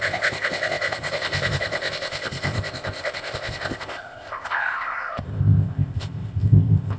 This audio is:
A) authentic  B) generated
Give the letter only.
B